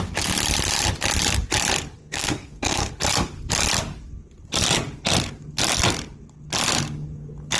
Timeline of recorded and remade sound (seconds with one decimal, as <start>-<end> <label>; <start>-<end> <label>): 0.0-2.0 recorded; 2.0-2.9 remade; 2.9-7.6 recorded